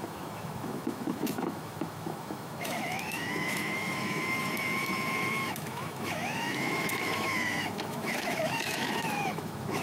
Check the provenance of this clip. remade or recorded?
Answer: remade